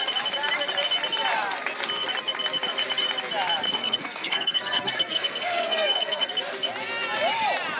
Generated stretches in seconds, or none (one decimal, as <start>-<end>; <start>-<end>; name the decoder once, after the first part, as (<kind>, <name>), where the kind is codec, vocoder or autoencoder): 3.8-6.3 (codec, SNAC)